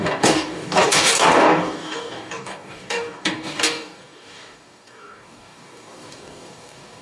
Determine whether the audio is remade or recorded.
remade